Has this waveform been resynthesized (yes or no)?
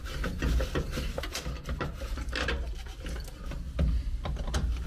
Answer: no